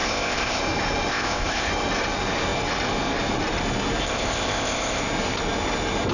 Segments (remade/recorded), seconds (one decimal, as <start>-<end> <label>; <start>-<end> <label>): 0.0-0.6 remade; 0.6-1.1 recorded; 1.1-1.7 remade; 1.7-4.0 recorded; 4.0-5.0 remade; 5.0-6.1 recorded